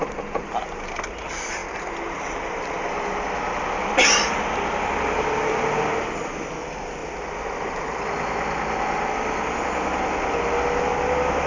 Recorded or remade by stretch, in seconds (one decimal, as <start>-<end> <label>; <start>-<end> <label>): 0.0-11.5 recorded

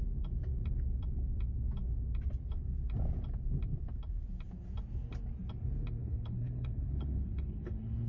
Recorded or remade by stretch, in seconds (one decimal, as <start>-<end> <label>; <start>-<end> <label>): 0.0-6.0 recorded; 6.0-8.1 remade

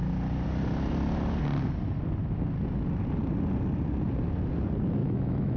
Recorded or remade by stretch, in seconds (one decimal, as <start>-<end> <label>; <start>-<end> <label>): 0.0-5.0 recorded; 5.0-5.6 remade

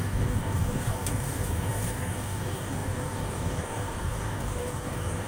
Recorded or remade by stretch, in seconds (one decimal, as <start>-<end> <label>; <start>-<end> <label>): 0.0-5.3 remade

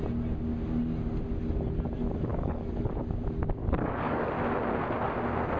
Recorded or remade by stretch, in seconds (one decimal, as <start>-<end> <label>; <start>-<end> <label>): 0.0-2.3 recorded; 2.3-3.0 remade; 3.0-3.6 recorded; 3.6-4.3 remade; 4.3-5.6 recorded

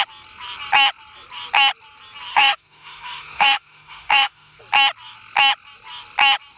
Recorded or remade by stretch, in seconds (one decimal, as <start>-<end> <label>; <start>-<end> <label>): 0.0-2.3 recorded; 2.3-4.6 remade; 4.6-6.6 recorded

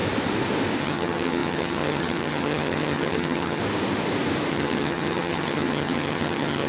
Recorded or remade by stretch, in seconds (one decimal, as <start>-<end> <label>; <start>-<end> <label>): 0.0-0.8 recorded; 0.8-3.6 remade; 3.6-4.5 recorded; 4.5-6.7 remade